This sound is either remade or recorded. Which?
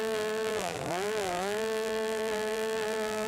remade